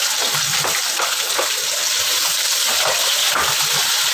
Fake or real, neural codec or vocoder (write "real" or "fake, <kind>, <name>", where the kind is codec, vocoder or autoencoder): fake, vocoder, BigVGAN v2